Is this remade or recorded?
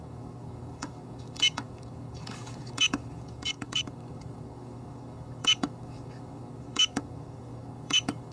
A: remade